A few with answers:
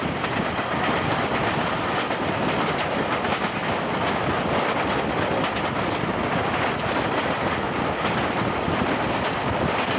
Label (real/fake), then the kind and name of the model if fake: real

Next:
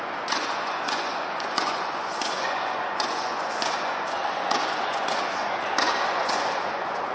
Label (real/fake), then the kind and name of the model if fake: fake, vocoder, Vocos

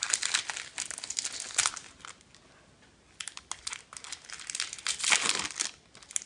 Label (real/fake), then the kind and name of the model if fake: real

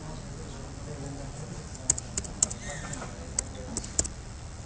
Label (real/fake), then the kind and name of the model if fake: real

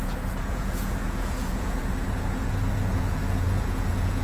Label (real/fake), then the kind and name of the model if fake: fake, vocoder, Vocos